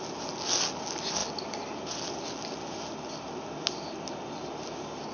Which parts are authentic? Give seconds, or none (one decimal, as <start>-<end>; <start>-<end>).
0.0-5.1

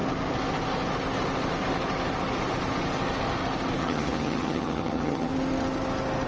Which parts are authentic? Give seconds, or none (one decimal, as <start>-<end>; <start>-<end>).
0.0-3.8; 5.3-6.3

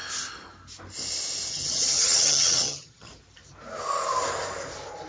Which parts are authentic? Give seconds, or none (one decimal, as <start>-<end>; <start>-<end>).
0.0-1.5; 3.1-5.1